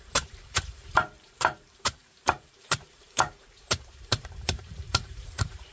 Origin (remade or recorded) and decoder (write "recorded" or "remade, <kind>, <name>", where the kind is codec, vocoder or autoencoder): remade, vocoder, BigVGAN v2